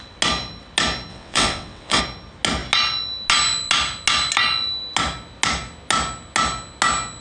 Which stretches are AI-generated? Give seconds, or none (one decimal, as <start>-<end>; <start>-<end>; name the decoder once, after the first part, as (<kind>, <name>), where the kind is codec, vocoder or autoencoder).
1.1-2.0 (vocoder, WaveNeXt)

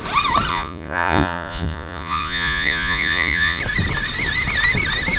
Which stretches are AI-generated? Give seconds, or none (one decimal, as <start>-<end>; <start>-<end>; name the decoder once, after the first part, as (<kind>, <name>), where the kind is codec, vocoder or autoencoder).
0.5-3.6 (vocoder, Vocos)

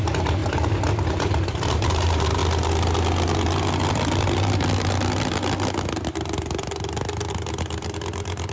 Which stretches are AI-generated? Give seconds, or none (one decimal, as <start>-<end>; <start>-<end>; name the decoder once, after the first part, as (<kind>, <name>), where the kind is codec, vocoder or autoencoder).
0.0-0.4 (vocoder, BigVGAN v2); 1.1-2.4; 7.3-8.5

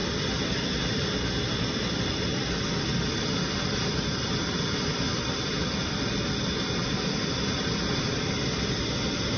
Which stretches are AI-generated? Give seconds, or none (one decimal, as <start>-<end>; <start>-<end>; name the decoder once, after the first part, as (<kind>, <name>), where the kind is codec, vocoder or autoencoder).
none

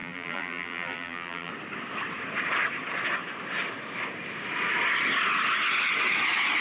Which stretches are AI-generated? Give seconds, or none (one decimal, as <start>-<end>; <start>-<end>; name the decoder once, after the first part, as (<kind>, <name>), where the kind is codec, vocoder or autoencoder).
0.0-1.5 (vocoder, BigVGAN v2)

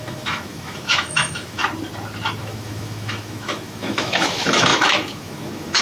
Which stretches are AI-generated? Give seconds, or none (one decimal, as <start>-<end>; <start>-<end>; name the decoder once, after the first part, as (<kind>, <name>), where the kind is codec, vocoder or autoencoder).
0.0-1.6 (autoencoder, DAC-VAE); 2.4-5.8

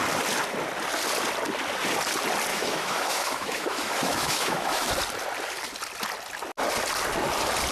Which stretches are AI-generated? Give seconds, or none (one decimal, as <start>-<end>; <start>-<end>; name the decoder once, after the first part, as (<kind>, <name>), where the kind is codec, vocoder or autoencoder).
2.5-4.9 (autoencoder, DAC-VAE)